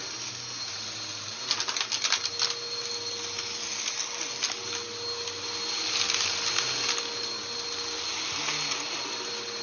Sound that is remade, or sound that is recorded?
recorded